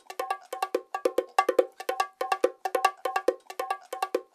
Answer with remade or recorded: recorded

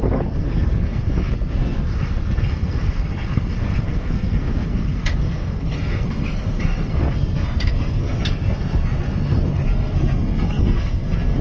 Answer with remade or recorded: remade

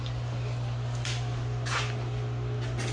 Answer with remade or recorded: recorded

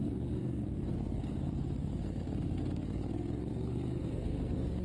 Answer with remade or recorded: remade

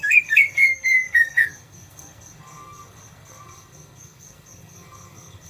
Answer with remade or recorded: remade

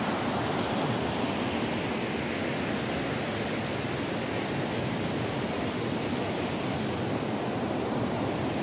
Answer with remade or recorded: recorded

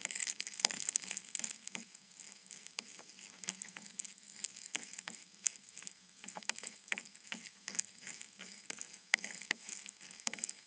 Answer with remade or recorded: remade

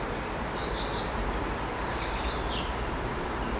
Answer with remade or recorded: remade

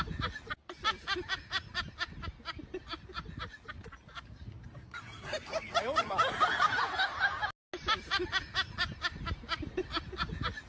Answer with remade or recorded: recorded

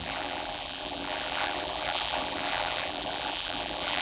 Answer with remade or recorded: remade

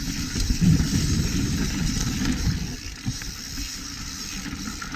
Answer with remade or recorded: remade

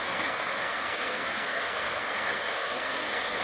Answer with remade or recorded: remade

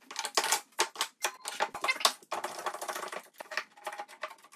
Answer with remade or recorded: recorded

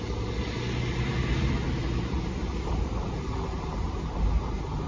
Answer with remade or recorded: recorded